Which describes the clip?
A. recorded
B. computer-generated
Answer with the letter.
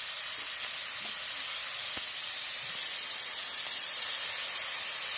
A